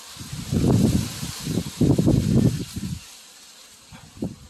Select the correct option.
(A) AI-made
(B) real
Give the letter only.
B